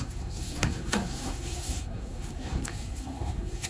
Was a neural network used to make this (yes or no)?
yes